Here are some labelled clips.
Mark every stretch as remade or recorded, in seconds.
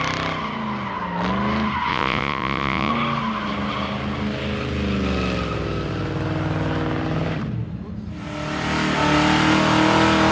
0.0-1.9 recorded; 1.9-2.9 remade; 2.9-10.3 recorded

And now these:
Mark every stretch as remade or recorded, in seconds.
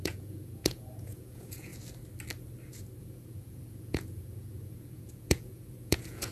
0.0-1.7 remade; 1.7-3.0 recorded; 3.0-6.3 remade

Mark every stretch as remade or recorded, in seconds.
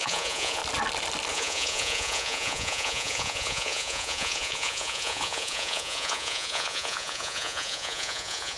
0.0-0.6 remade; 0.6-1.3 recorded; 1.3-8.6 remade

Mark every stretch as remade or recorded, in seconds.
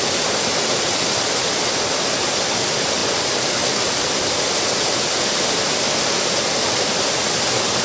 0.0-7.8 recorded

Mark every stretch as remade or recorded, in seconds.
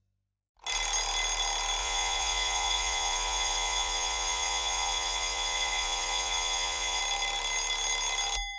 0.0-1.8 recorded; 1.8-7.0 remade; 7.0-8.6 recorded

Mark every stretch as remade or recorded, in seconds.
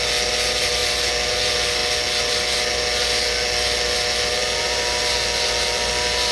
0.0-6.3 recorded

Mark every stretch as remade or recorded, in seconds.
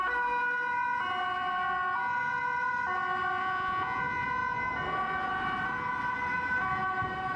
0.0-3.4 recorded; 3.4-4.0 remade; 4.0-7.4 recorded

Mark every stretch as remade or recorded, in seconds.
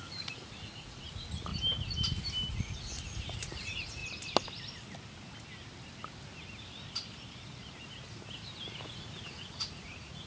0.0-1.5 remade; 1.5-2.5 recorded; 2.5-4.0 remade; 4.0-8.8 recorded; 8.8-10.3 remade